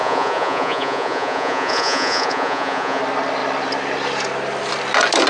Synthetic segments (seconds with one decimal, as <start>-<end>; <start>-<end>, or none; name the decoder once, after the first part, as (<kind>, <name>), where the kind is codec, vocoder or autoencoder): 0.0-3.0 (vocoder, Vocos)